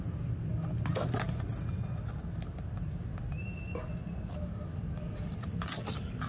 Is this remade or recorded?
recorded